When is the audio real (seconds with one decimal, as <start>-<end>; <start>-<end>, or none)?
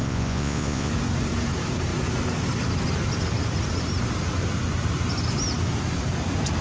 0.9-6.6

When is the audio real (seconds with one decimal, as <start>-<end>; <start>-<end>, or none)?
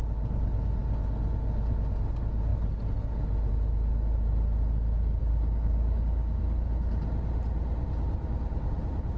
0.0-5.2; 6.4-9.2